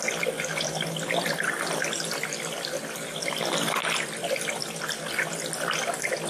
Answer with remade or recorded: recorded